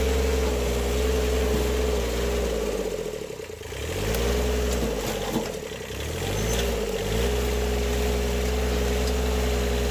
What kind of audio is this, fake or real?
real